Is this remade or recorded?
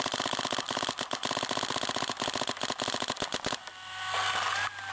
recorded